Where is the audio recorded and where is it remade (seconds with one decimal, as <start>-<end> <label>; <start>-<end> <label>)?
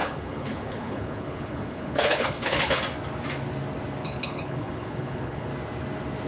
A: 0.0-2.8 remade; 2.8-4.0 recorded; 4.0-5.5 remade; 5.5-6.3 recorded